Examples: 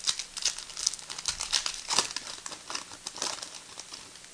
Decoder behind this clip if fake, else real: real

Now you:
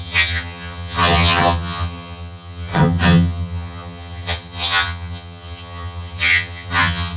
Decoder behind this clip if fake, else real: fake, vocoder, HiFi-GAN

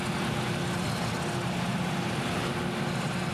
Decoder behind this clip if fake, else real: real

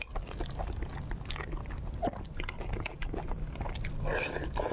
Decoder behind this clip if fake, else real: real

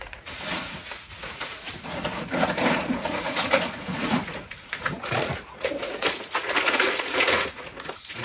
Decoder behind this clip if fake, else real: fake, vocoder, Vocos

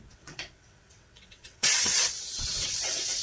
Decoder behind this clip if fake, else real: fake, vocoder, WaveNeXt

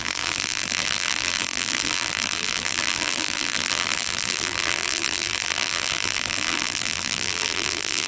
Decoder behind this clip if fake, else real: fake, vocoder, BigVGAN v2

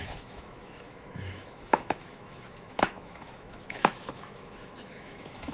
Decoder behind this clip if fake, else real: fake, autoencoder, DAC-VAE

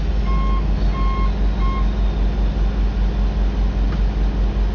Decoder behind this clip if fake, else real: real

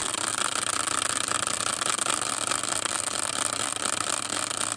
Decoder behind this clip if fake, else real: real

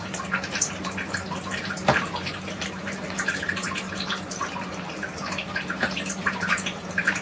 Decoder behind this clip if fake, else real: fake, vocoder, BigVGAN v2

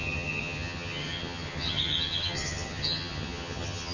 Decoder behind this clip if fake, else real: fake, vocoder, HiFi-GAN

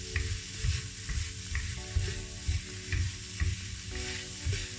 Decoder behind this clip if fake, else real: real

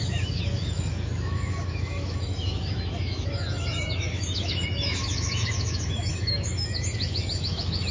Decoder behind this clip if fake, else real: fake, autoencoder, DAC-VAE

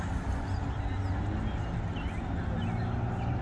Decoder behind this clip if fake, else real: real